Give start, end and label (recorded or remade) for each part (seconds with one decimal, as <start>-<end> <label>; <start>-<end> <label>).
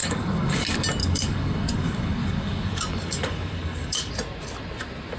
0.0-0.6 remade; 0.6-1.0 recorded; 1.0-4.1 remade; 4.1-5.2 recorded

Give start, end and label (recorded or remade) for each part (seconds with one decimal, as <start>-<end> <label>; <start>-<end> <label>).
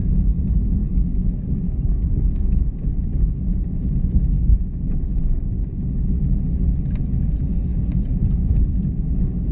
0.0-0.8 recorded; 0.8-2.9 remade; 2.9-9.5 recorded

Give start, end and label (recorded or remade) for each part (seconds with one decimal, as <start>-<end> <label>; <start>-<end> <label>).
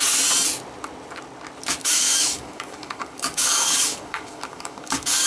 0.0-1.8 recorded; 1.8-5.3 remade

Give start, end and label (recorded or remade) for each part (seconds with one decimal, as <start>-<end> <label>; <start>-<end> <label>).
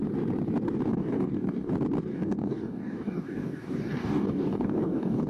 0.0-0.9 recorded; 0.9-1.7 remade; 1.7-2.1 recorded; 2.1-5.3 remade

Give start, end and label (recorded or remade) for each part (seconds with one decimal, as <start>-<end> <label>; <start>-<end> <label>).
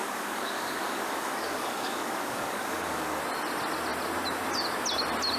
0.0-3.2 remade; 3.2-5.4 recorded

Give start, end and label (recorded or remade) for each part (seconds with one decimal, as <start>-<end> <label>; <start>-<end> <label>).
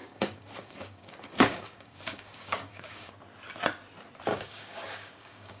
0.0-3.1 remade; 3.1-4.3 recorded; 4.3-5.6 remade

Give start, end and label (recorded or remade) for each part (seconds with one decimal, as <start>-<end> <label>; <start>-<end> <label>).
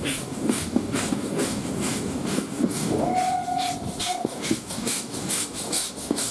0.0-3.1 remade; 3.1-4.0 recorded; 4.0-6.3 remade